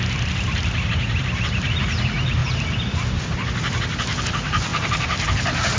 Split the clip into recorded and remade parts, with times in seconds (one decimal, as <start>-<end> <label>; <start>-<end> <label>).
0.0-5.8 remade